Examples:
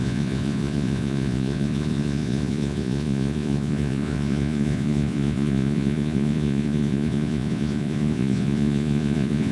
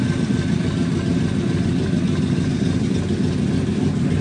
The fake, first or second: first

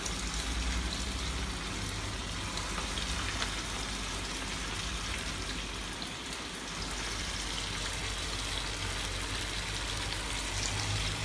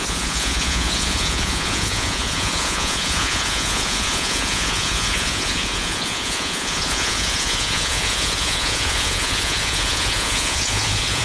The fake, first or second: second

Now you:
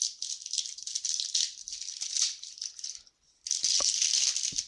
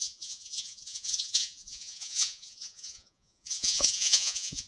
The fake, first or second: second